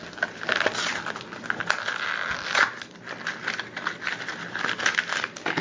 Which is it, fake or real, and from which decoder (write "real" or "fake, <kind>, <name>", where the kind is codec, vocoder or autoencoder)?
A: real